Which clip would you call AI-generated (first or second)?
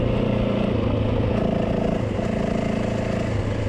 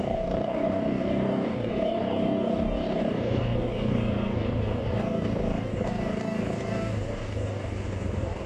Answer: second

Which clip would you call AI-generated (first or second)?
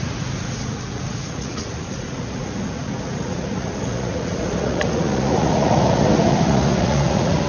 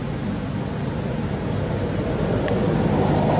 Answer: first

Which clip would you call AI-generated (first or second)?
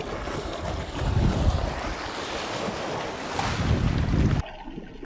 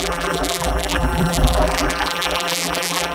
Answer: second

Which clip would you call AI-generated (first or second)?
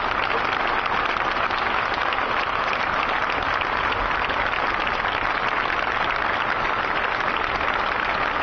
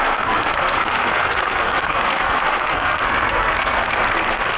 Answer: second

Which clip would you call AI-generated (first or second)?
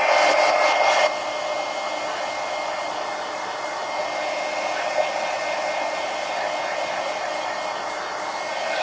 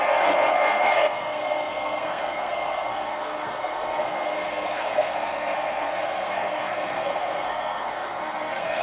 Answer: second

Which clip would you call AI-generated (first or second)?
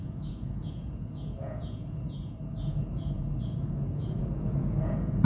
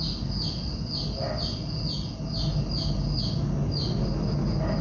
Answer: first